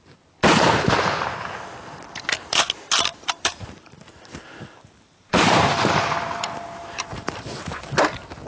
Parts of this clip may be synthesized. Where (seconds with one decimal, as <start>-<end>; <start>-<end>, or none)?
3.1-7.9